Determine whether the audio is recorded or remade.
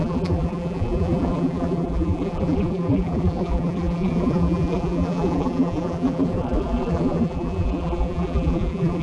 remade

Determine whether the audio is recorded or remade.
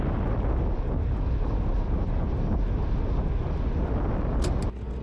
recorded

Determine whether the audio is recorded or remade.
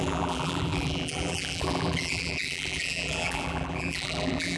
remade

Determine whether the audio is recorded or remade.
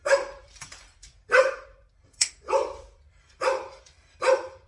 remade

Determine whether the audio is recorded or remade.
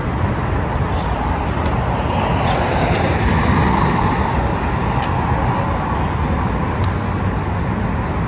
recorded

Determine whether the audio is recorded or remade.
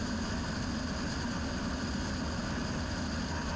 recorded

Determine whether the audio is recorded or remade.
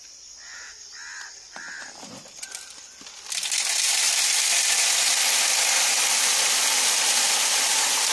remade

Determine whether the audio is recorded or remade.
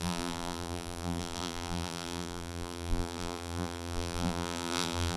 remade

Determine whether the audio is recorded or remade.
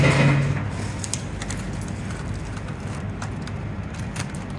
recorded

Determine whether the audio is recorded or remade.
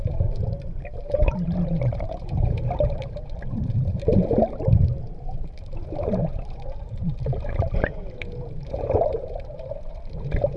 remade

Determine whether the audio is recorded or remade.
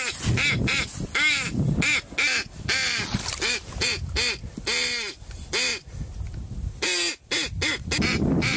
recorded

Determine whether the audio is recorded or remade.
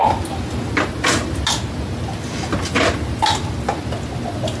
recorded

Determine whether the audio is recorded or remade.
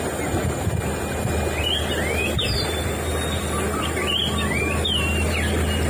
recorded